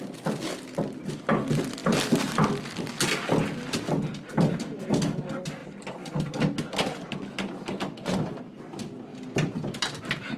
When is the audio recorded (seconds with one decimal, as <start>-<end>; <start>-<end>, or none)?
0.0-1.8; 2.9-5.6; 6.1-9.1; 10.0-10.4